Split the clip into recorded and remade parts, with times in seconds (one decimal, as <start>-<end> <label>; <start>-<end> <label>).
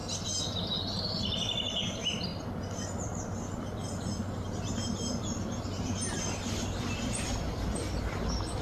0.0-8.6 recorded